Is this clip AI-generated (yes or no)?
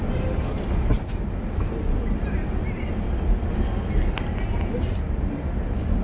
no